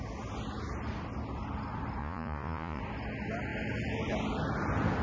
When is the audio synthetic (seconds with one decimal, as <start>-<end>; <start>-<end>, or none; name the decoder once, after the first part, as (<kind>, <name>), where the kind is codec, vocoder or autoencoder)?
2.0-2.8 (vocoder, Vocos)